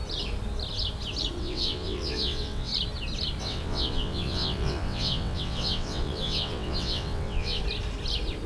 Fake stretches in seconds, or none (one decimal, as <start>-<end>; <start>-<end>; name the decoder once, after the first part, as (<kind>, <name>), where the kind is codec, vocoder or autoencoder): 1.4-2.7 (vocoder, WaveNeXt); 3.4-7.6